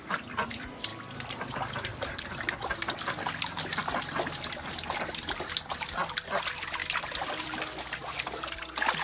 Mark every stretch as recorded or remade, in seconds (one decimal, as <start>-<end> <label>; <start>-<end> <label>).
0.0-0.9 remade; 0.9-1.5 recorded; 1.5-1.9 remade; 1.9-5.1 recorded; 5.1-6.8 remade; 6.8-7.4 recorded; 7.4-9.0 remade